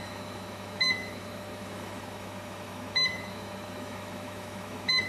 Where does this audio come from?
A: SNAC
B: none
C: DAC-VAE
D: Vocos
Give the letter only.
C